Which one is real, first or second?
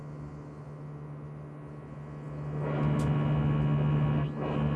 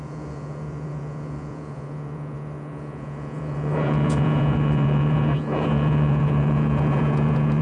first